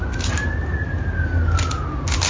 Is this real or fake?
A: real